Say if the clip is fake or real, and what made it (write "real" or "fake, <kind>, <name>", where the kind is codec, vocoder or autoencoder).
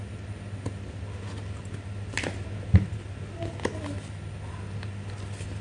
real